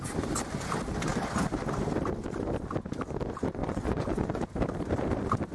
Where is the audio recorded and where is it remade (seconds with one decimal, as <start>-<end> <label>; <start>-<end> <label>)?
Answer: 0.0-3.6 recorded; 3.6-4.4 remade; 4.4-5.5 recorded